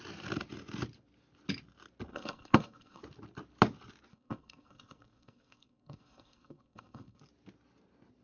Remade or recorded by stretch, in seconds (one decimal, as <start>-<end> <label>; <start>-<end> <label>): 0.0-2.1 recorded; 2.1-3.0 remade; 3.0-4.1 recorded; 4.1-7.2 remade; 7.2-8.2 recorded